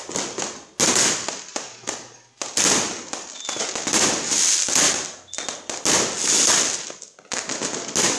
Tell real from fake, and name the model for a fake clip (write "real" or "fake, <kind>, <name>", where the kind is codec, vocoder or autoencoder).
real